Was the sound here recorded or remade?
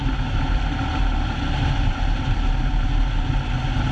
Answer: remade